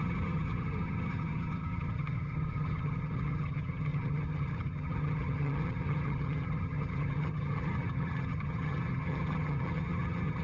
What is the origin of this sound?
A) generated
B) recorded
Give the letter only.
A